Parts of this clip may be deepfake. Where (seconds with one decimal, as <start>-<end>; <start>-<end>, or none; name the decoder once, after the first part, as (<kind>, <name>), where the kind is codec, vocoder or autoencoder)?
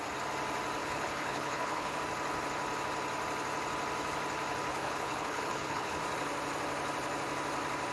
0.8-2.0 (codec, HILCodec); 4.7-5.9